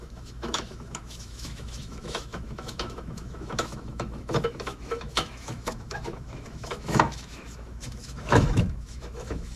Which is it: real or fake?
fake